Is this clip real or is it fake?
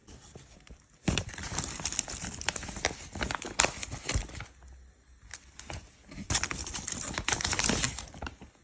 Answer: real